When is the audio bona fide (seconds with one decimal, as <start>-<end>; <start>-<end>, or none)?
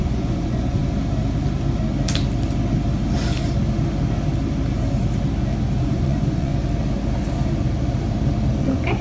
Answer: 0.8-5.8; 6.5-8.6